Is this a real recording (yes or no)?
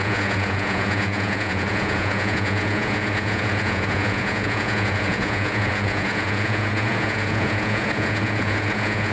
no